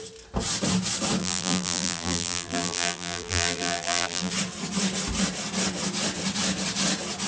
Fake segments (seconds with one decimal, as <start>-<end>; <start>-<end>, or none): 1.2-4.3